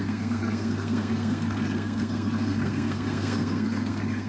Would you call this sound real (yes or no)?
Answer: no